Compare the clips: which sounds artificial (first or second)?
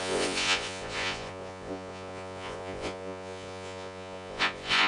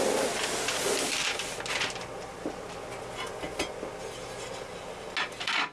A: first